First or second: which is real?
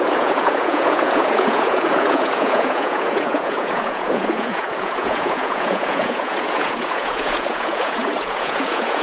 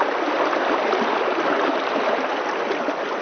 second